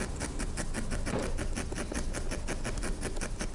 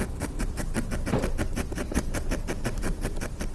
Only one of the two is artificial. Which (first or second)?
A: second